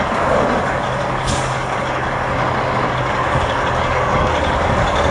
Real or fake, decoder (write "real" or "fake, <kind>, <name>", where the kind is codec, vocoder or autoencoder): fake, codec, DAC